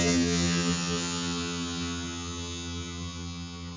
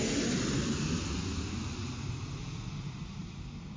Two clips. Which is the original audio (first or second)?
second